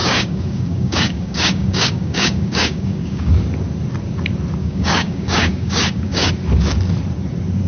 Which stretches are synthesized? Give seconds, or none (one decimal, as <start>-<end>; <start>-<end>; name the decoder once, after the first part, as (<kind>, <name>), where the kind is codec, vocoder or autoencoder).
0.0-3.3 (codec, DAC); 4.6-6.3